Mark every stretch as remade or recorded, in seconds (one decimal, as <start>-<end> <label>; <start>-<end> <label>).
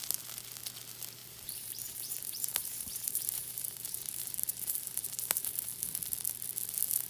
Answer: 0.0-1.2 recorded; 1.2-5.5 remade; 5.5-7.1 recorded